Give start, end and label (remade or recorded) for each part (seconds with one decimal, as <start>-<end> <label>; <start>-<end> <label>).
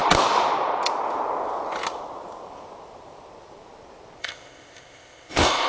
0.0-4.2 recorded; 4.2-5.7 remade